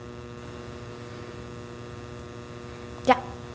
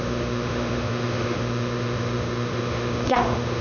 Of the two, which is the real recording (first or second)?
first